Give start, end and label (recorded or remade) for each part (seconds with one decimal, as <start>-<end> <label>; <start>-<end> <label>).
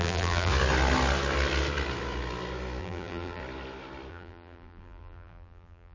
0.0-0.5 remade; 0.5-2.8 recorded; 2.8-3.4 remade; 3.4-4.1 recorded; 4.1-5.9 remade